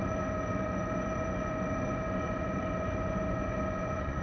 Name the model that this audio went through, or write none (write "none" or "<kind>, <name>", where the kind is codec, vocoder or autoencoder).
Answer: vocoder, Vocos